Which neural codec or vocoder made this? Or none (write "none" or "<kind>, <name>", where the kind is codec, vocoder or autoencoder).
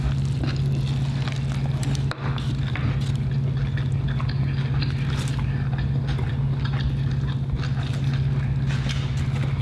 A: none